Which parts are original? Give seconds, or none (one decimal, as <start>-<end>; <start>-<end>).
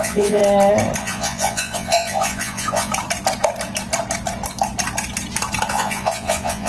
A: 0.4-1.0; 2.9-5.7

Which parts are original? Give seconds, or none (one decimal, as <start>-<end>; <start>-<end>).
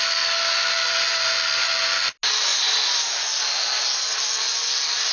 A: 0.0-5.1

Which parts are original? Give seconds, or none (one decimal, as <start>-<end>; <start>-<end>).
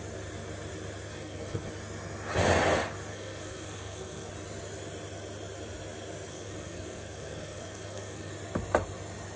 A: 0.0-1.1; 1.7-3.1; 4.3-6.3; 8.3-9.4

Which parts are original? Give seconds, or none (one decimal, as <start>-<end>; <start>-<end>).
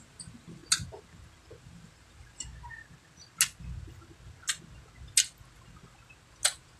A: 0.6-1.6; 2.5-6.3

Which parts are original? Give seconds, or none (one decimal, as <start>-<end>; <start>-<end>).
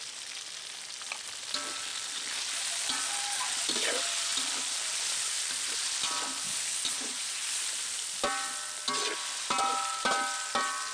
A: 0.0-6.9; 7.4-10.9